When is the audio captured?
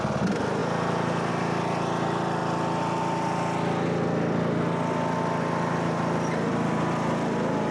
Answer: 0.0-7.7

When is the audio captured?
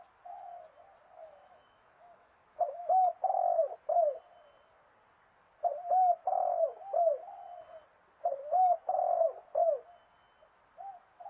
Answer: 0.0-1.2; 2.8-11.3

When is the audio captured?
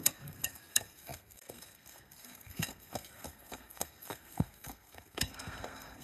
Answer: none